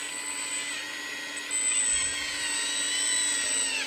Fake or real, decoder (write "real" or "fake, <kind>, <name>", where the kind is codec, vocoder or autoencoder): real